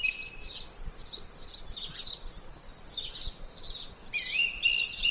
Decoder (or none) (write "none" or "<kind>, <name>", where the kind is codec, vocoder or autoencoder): vocoder, BigVGAN v2